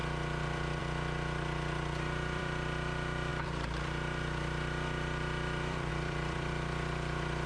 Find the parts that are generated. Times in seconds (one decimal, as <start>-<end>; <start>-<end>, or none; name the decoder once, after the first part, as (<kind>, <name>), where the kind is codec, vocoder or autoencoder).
0.0-7.5 (vocoder, BigVGAN v2)